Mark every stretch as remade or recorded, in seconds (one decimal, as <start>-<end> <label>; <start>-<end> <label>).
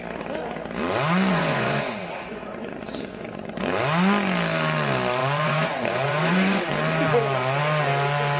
0.0-1.3 recorded; 1.3-3.7 remade; 3.7-5.2 recorded; 5.2-6.7 remade; 6.7-8.4 recorded